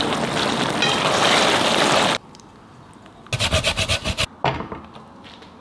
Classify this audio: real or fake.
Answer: real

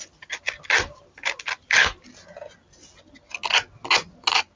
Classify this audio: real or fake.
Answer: real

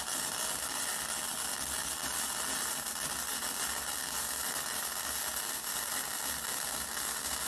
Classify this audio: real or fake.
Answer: real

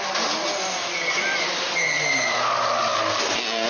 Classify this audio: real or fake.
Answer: real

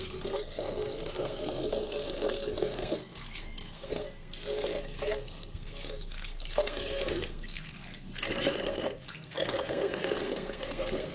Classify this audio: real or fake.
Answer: fake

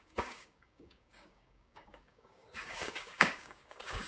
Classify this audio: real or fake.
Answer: fake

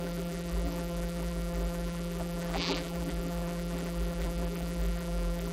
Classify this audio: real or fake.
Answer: fake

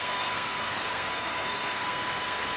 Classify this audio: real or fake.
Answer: fake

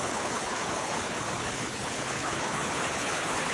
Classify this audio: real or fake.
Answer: fake